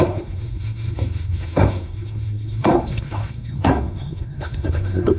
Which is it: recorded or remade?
remade